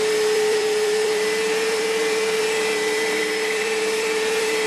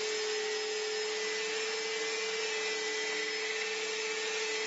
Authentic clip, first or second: second